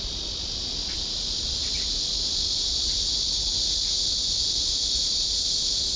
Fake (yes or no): no